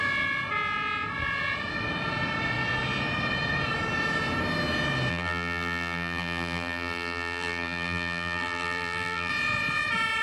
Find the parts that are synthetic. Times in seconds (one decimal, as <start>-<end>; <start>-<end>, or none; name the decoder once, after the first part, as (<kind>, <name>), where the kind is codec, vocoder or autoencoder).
5.1-9.3 (vocoder, BigVGAN v2)